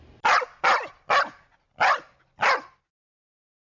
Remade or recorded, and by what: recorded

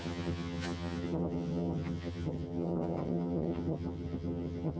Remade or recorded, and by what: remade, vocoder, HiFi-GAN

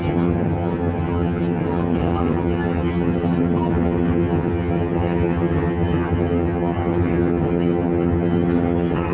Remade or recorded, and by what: remade, vocoder, HiFi-GAN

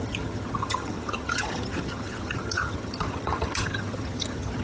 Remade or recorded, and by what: remade, vocoder, HiFi-GAN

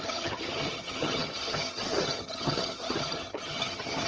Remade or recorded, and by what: remade, vocoder, HiFi-GAN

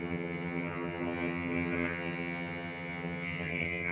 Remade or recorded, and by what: remade, vocoder, HiFi-GAN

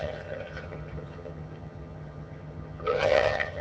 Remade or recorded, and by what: remade, vocoder, HiFi-GAN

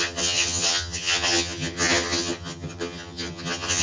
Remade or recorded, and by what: remade, vocoder, HiFi-GAN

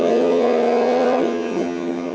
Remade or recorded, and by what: remade, vocoder, HiFi-GAN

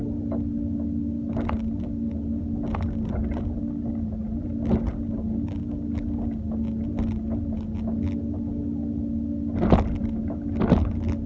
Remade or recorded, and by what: recorded